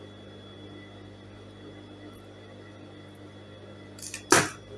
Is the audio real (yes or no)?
yes